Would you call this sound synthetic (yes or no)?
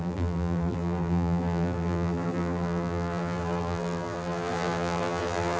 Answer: yes